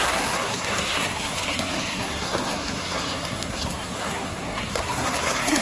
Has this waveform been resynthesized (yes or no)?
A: yes